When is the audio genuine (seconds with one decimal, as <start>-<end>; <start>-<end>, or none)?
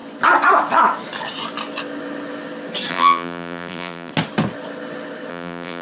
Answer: 0.0-2.9; 4.1-5.3